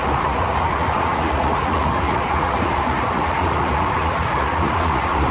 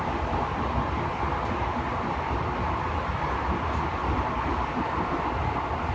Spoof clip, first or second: first